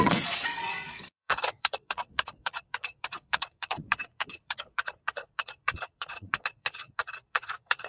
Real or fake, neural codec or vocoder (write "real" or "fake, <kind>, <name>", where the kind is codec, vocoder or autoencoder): fake, vocoder, Vocos